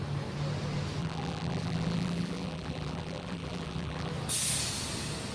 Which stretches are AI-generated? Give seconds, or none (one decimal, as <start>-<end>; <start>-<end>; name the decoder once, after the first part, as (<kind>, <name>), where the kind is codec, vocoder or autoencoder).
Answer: 1.0-4.1 (vocoder, BigVGAN v2)